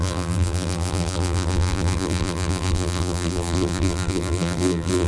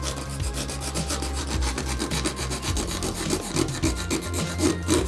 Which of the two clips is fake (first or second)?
first